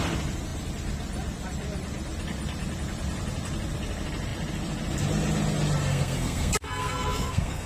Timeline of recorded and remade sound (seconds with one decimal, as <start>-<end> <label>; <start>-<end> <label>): 0.0-5.9 recorded; 5.9-7.7 remade